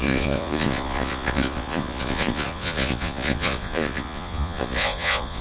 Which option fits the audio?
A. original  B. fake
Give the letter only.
B